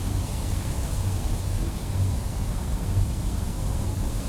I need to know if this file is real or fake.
fake